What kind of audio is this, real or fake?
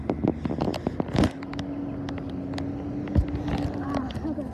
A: real